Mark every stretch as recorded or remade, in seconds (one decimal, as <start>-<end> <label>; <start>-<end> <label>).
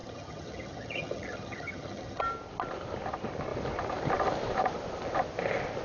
0.0-2.2 remade; 2.2-5.8 recorded